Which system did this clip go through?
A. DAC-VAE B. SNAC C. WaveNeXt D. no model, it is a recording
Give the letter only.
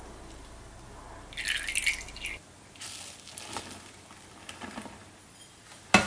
D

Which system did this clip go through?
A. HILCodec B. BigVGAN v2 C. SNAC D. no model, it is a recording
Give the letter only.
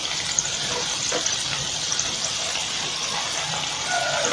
D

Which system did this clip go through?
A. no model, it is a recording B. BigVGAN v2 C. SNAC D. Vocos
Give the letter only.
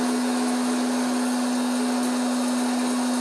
A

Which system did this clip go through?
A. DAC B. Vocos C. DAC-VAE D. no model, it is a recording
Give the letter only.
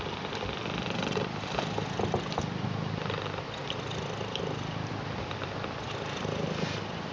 D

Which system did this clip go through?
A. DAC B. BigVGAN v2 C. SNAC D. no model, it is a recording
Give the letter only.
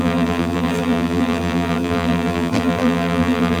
B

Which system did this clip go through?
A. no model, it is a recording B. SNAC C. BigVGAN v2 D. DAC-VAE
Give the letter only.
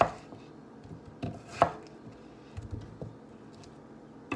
A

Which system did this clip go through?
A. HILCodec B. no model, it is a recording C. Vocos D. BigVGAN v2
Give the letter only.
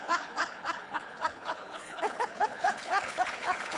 A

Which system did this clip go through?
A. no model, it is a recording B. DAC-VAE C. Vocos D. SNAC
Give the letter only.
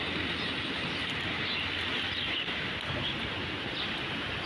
A